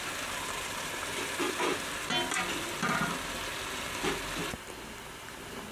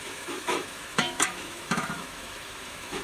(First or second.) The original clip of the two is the first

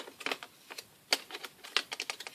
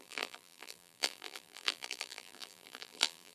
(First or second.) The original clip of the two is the first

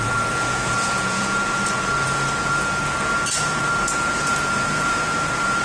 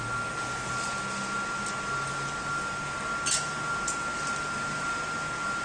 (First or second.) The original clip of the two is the second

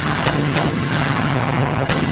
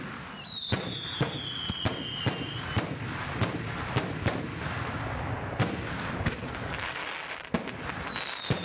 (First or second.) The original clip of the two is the second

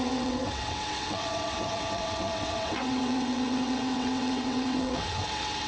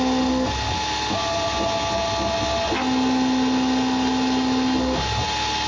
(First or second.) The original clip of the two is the second